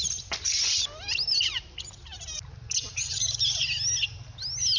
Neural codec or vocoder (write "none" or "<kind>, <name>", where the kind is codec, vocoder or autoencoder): none